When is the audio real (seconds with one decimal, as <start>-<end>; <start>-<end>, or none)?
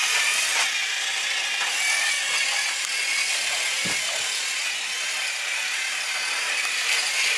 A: 0.0-7.4